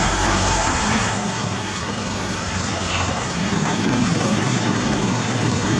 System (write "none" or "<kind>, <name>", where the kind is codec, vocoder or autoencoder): codec, SNAC